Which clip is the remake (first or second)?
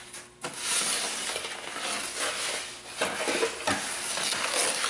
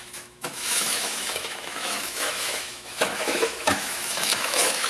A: second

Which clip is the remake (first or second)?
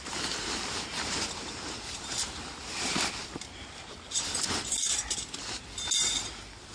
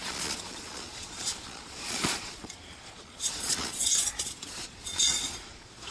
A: second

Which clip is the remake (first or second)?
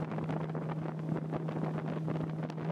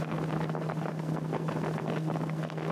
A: second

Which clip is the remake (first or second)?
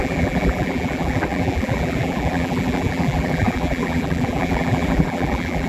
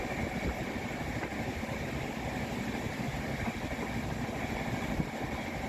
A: first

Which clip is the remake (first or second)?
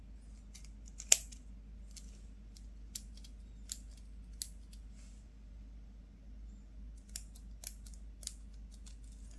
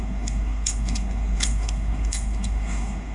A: second